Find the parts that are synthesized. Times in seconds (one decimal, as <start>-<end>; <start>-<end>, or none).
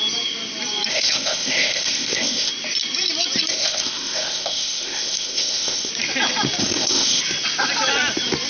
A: 0.9-2.5; 3.5-5.9; 6.6-7.2